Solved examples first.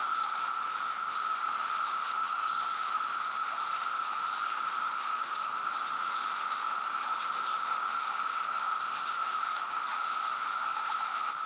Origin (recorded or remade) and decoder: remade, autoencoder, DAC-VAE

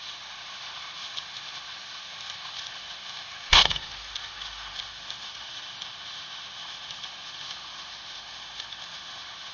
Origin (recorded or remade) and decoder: remade, autoencoder, DAC-VAE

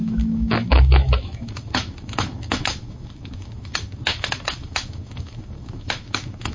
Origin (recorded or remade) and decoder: remade, autoencoder, DAC-VAE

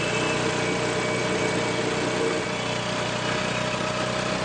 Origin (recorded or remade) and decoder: recorded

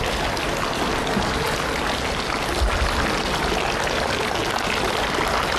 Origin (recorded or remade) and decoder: recorded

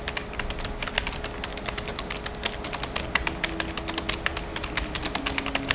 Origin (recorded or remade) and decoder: recorded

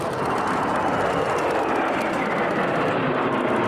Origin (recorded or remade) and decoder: recorded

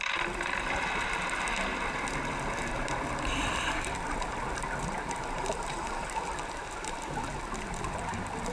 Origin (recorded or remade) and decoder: recorded